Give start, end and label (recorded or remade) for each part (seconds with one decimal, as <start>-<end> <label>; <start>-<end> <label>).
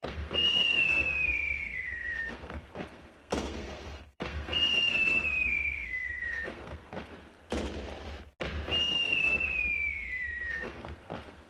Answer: 0.0-7.1 remade; 7.1-8.8 recorded; 8.8-9.6 remade; 9.6-10.5 recorded; 10.5-11.5 remade